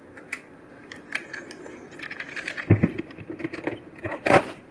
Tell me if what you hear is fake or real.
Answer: real